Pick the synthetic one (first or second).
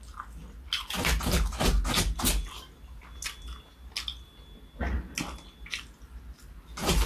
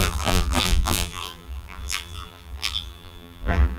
second